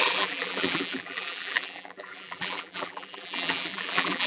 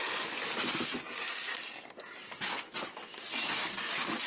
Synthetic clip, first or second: first